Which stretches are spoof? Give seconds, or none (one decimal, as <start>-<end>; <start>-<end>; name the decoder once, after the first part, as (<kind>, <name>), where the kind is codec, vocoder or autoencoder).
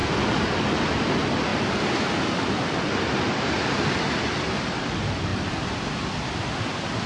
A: none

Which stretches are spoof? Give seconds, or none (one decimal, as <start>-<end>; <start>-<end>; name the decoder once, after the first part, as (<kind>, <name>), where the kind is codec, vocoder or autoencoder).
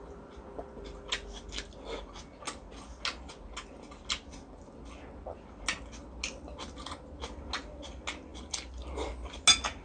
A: none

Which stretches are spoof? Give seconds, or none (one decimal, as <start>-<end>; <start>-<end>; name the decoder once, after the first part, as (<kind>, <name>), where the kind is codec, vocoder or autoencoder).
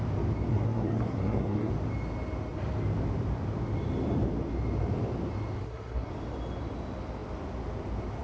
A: 0.5-1.7 (codec, SNAC); 5.6-6.1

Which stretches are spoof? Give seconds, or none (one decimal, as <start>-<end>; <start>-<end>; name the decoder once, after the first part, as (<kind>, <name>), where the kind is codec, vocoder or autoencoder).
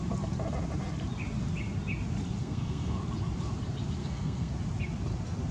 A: 2.4-3.0 (codec, SNAC); 4.0-4.5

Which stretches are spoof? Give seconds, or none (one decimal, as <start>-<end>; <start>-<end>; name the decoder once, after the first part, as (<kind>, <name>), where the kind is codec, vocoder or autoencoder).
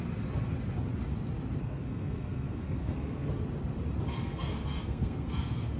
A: 1.6-3.3 (codec, SNAC); 4.2-5.8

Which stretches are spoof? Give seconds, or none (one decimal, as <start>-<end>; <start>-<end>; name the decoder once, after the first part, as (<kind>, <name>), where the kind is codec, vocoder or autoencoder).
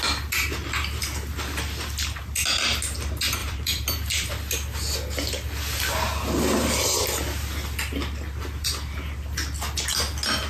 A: 3.4-4.3 (vocoder, BigVGAN v2)